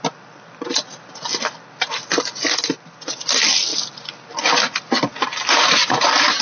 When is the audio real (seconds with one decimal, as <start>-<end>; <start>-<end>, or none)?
0.0-6.4